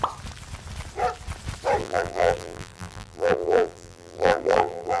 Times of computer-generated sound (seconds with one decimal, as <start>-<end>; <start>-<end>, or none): 1.8-5.0